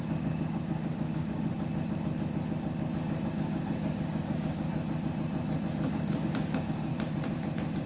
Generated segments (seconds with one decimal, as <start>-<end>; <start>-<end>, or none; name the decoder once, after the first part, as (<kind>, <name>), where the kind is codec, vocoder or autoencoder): 0.0-1.5 (codec, DAC); 3.3-4.7; 5.9-6.9